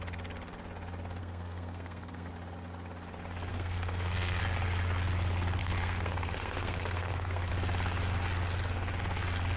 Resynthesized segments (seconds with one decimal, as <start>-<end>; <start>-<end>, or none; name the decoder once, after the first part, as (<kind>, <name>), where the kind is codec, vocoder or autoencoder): 1.2-2.3 (codec, SNAC); 3.5-4.4; 5.6-7.5